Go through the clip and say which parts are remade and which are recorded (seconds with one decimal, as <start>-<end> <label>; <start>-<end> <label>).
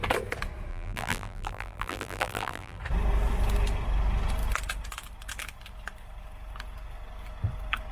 0.0-0.7 recorded; 0.7-2.8 remade; 2.8-7.9 recorded